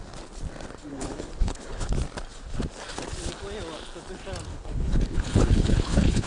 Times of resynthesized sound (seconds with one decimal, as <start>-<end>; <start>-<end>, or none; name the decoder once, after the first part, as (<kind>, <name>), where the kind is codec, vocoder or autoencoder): 0.9-1.9 (codec, HILCodec); 4.5-6.3